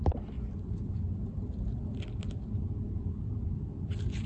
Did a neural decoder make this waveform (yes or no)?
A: yes